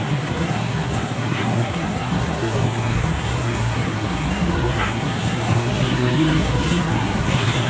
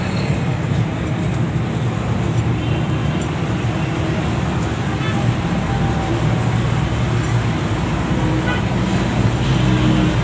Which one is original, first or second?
second